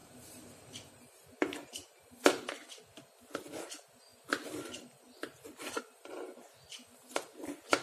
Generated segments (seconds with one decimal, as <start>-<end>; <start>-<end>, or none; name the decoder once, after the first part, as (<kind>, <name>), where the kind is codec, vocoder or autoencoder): 0.0-2.2 (vocoder, BigVGAN v2)